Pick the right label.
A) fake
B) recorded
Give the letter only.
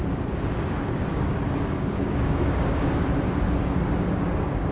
A